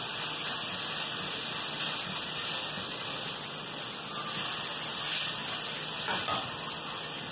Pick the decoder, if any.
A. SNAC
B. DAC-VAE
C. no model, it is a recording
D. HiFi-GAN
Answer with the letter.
C